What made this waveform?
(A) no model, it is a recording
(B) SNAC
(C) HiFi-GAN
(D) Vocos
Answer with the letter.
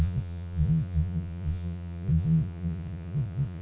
D